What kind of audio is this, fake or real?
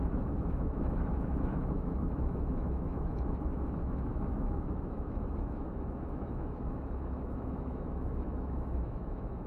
fake